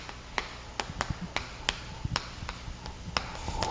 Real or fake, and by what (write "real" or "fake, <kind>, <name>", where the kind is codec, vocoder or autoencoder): real